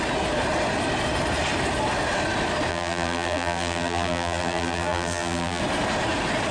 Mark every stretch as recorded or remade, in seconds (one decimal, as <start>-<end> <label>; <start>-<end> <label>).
0.0-2.7 recorded; 2.7-5.6 remade; 5.6-6.5 recorded